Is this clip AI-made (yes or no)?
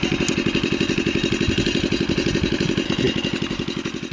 no